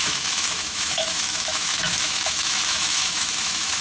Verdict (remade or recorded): remade